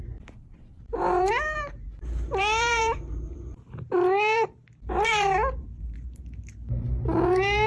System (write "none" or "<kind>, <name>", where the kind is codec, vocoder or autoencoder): vocoder, BigVGAN v2